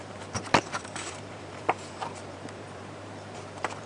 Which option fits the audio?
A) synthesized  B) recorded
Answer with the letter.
A